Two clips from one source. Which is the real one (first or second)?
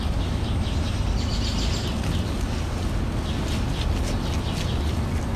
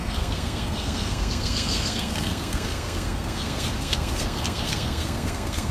first